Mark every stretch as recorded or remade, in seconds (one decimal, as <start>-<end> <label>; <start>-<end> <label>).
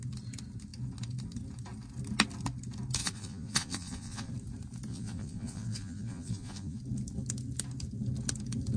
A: 0.0-3.0 recorded; 3.0-4.3 remade; 4.3-4.9 recorded; 4.9-6.8 remade; 6.8-8.8 recorded